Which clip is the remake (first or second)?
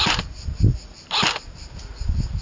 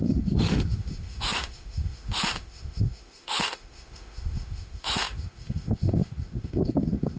second